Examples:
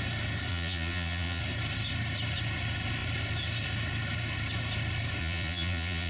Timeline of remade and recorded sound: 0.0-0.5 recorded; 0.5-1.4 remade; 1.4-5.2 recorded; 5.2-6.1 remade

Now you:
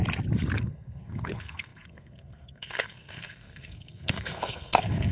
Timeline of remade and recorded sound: 0.0-0.6 recorded; 0.6-5.1 remade

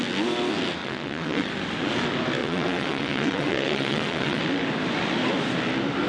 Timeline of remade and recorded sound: 0.0-0.8 recorded; 0.8-1.5 remade; 1.5-2.4 recorded; 2.4-4.4 remade; 4.4-6.1 recorded

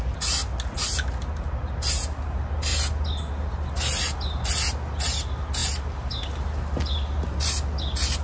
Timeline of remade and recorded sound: 0.0-8.2 recorded

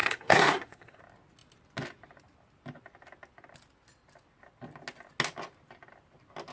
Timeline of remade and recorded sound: 0.0-1.0 remade; 1.0-6.5 recorded